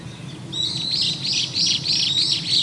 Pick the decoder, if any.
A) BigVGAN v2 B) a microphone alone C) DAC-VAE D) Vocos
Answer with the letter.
B